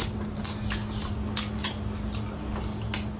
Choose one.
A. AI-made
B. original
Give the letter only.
B